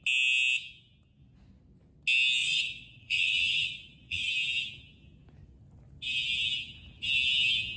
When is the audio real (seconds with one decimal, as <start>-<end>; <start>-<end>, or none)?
0.0-2.4; 4.3-7.8